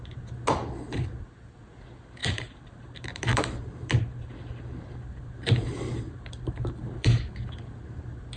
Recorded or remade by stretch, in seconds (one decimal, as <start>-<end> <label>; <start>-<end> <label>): 0.0-2.2 recorded; 2.2-7.2 remade; 7.2-8.4 recorded